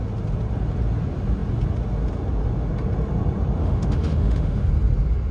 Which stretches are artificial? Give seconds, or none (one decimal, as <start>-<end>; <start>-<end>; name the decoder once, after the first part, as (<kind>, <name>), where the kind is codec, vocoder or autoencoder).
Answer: 3.6-4.7 (autoencoder, DAC-VAE)